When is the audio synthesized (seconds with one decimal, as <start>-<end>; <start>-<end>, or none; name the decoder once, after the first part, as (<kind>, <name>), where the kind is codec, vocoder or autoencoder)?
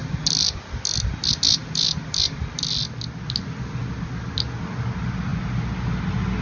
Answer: none